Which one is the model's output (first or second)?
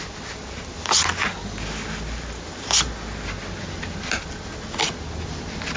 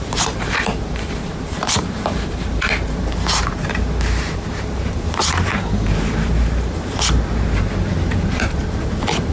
second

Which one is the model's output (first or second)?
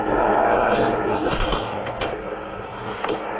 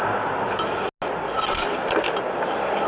first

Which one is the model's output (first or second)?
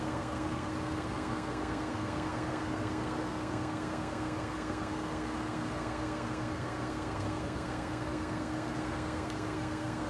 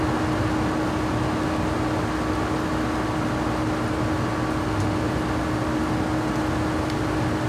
first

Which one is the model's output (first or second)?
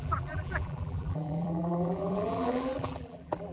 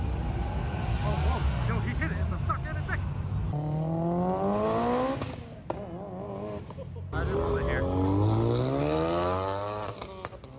first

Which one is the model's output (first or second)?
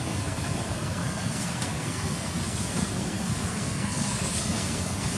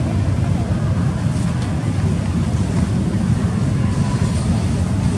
first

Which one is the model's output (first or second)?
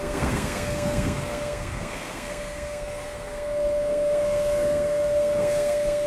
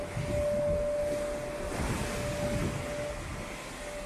first